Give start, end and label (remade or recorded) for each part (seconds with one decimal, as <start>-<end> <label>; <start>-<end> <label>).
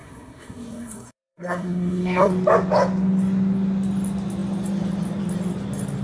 0.0-2.3 remade; 2.3-6.0 recorded